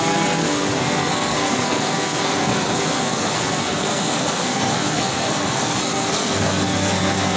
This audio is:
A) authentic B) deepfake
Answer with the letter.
B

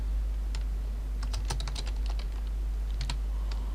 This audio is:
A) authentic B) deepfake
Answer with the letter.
A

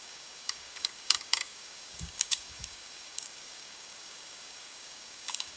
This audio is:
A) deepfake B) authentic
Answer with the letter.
A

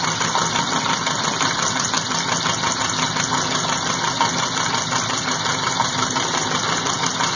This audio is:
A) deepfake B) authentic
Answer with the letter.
B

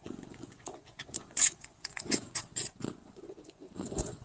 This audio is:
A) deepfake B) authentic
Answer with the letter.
A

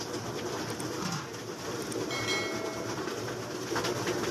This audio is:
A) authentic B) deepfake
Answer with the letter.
A